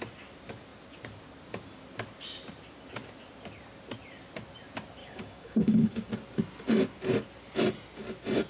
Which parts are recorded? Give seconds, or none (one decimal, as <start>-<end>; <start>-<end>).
0.0-5.0; 6.1-8.5